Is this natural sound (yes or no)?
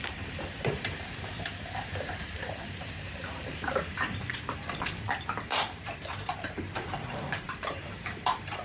no